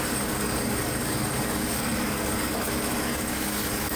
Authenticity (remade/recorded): remade